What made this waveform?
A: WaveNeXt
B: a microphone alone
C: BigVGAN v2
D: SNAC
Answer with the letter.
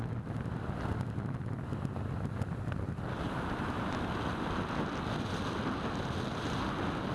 B